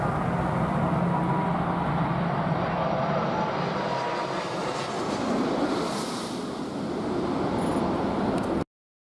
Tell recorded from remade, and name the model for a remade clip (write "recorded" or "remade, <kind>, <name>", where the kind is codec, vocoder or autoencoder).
recorded